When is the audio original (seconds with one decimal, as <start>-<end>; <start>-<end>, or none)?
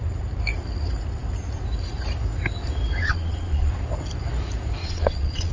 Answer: 0.0-3.0; 3.7-4.8